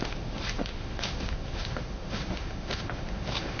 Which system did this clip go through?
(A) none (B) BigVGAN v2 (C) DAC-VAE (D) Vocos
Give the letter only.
C